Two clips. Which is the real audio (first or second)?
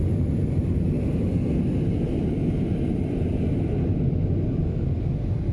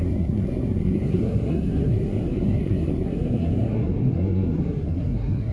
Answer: first